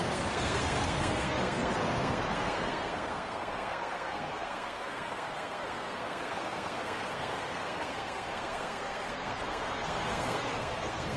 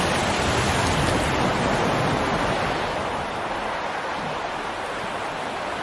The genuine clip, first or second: second